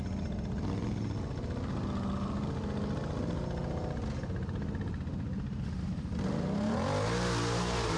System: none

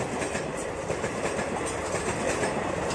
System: none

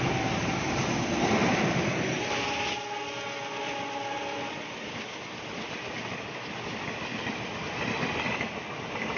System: none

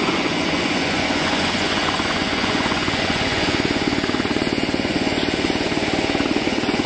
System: vocoder, Vocos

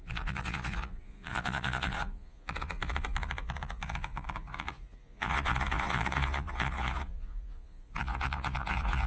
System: vocoder, Vocos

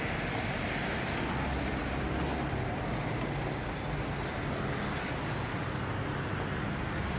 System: none